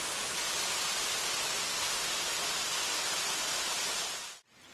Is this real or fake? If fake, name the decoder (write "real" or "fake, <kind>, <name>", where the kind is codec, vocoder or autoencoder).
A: real